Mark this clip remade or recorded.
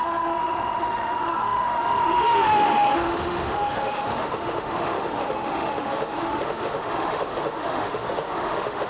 remade